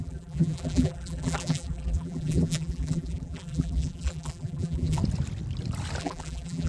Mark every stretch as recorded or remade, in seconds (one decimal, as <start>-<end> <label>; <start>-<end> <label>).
0.0-5.0 remade; 5.0-6.0 recorded; 6.0-6.7 remade